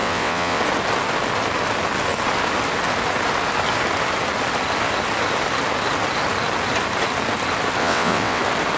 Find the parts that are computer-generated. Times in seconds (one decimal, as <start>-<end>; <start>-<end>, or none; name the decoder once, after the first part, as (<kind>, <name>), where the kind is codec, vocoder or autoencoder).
0.0-0.6 (vocoder, WaveNeXt); 7.8-8.4